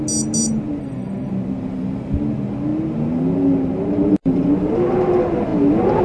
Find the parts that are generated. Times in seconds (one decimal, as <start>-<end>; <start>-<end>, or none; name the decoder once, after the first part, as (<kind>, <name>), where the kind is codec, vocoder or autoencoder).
0.8-1.3 (codec, SNAC)